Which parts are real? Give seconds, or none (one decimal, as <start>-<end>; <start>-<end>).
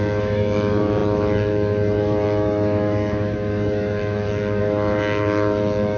none